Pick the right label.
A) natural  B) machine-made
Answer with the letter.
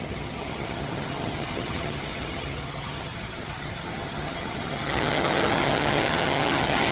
B